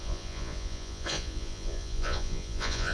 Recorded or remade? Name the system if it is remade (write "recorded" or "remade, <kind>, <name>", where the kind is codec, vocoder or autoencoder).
remade, vocoder, Vocos